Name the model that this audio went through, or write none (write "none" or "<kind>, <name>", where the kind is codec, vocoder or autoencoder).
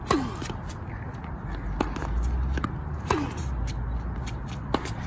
none